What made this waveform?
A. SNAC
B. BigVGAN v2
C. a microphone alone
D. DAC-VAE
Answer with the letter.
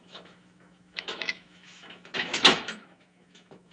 D